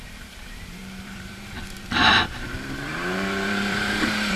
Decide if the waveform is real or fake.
fake